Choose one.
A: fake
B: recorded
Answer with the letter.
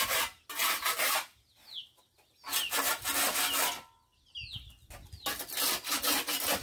B